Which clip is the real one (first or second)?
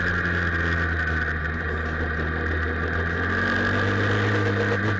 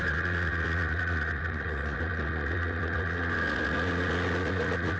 first